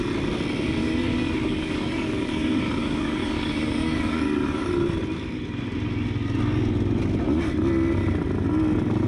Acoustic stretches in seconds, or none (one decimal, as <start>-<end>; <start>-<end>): 0.0-0.8; 4.7-9.1